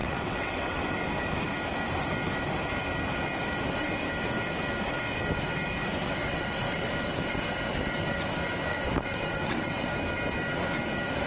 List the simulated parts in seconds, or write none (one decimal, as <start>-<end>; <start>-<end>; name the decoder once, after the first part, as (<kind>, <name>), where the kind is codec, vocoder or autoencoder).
0.0-0.8 (vocoder, WaveNeXt); 6.0-6.9; 8.7-9.9